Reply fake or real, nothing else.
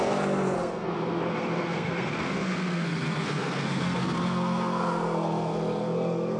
fake